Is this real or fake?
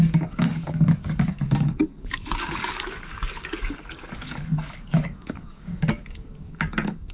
fake